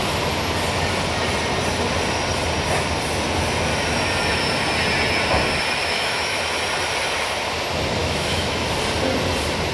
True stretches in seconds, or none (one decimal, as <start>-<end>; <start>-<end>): 0.0-5.8; 6.4-8.0; 8.7-9.7